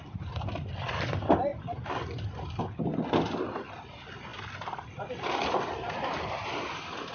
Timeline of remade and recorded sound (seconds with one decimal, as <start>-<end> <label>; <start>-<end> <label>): 0.0-7.1 recorded